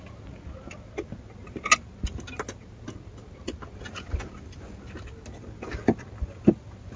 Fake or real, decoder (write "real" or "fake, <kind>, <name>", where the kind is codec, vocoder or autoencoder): real